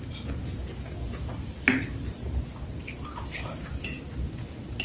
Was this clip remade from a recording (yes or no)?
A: no